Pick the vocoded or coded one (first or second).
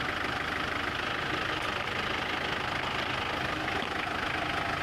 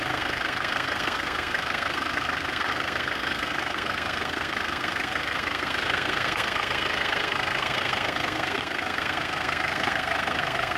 second